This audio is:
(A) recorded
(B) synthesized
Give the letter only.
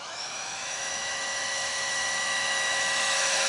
B